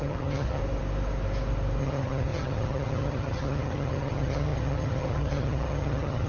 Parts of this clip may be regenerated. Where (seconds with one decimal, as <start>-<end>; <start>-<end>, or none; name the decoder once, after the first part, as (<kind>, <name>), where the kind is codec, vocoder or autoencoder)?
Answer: 0.0-0.6 (vocoder, HiFi-GAN); 1.8-6.3